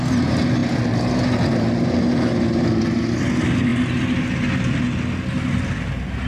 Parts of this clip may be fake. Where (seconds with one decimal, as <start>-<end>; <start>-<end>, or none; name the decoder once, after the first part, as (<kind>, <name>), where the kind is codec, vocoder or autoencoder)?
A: none